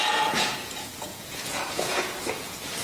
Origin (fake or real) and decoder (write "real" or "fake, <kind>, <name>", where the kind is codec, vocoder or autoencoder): fake, vocoder, Vocos